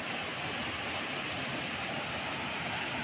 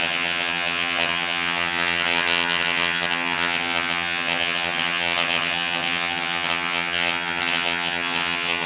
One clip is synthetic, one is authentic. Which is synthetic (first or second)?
second